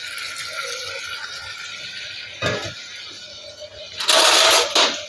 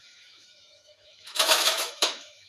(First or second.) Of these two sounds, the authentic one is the first